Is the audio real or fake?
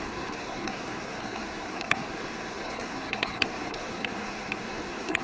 fake